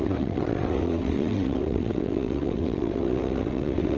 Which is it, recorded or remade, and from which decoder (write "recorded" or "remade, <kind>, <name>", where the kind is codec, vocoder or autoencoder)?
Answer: remade, vocoder, WaveNeXt